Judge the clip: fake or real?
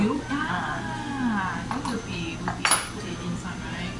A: real